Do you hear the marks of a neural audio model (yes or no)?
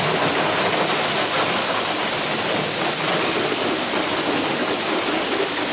no